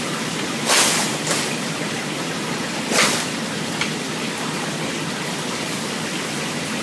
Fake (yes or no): no